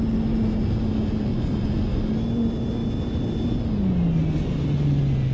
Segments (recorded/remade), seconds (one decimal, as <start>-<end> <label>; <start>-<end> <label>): 0.0-1.3 recorded; 1.3-2.0 remade; 2.0-5.3 recorded